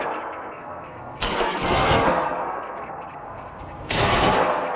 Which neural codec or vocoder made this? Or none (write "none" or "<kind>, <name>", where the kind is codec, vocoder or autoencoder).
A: codec, SNAC